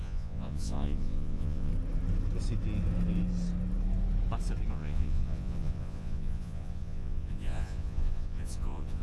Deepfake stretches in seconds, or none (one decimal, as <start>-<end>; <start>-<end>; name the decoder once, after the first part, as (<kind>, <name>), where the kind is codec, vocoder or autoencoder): 0.0-1.7 (vocoder, Vocos); 4.7-9.0